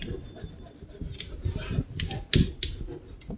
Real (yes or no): yes